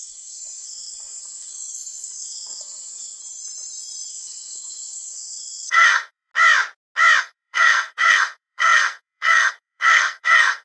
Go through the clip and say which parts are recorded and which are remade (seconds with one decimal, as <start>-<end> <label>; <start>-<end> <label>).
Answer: 0.0-3.2 remade; 3.2-4.1 recorded; 4.1-6.3 remade; 6.3-7.2 recorded; 7.2-10.6 remade